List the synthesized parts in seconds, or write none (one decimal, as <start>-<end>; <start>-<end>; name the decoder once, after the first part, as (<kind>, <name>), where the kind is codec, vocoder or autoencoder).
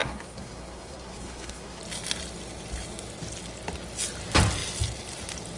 0.0-1.8 (codec, SNAC)